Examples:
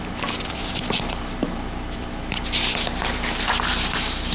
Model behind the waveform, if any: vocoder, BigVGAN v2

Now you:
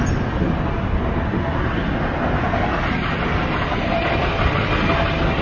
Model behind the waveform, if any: none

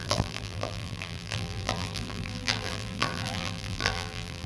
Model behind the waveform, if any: vocoder, BigVGAN v2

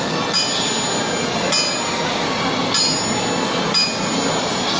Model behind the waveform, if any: none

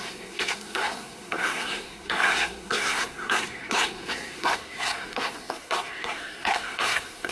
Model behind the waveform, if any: codec, SNAC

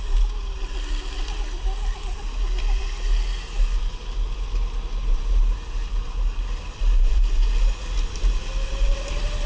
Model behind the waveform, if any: none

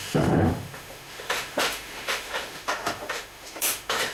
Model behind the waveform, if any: autoencoder, DAC-VAE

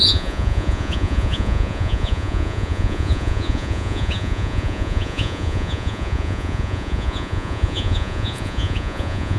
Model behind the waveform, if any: vocoder, Vocos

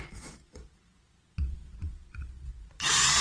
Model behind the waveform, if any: vocoder, Vocos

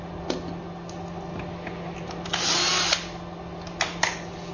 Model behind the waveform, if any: none